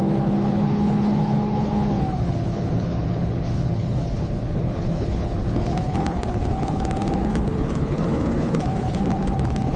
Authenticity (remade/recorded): remade